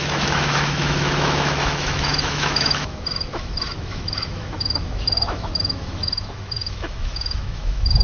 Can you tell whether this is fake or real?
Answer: fake